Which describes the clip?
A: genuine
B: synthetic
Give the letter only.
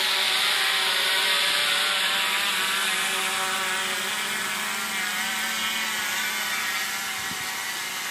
A